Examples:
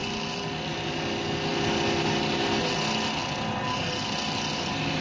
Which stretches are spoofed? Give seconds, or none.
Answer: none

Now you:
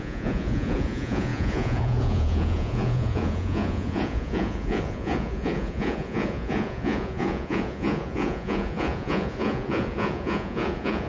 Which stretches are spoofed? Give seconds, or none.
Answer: 0.0-11.1 (vocoder, Vocos)

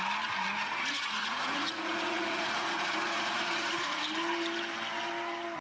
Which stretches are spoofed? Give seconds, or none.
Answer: 0.6-4.0 (vocoder, Vocos)

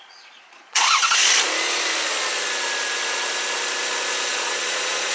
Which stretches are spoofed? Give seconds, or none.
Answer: 0.0-1.2 (vocoder, Vocos); 4.3-5.1

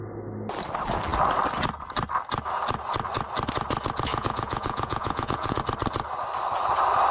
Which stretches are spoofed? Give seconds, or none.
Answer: 4.1-5.6 (vocoder, Vocos)

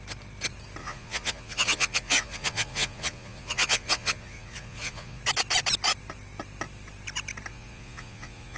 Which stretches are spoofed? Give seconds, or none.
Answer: 0.8-5.2 (vocoder, Vocos); 7.5-8.6

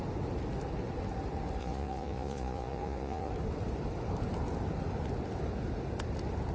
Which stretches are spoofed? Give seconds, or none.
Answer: 1.6-3.3 (vocoder, Vocos)